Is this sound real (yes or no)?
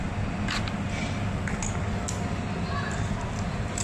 yes